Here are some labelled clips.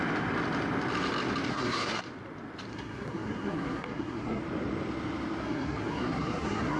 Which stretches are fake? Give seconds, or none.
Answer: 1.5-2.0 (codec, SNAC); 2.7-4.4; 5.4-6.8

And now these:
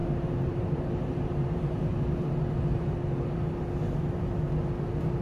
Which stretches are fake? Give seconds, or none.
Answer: 0.0-2.9 (vocoder, BigVGAN v2)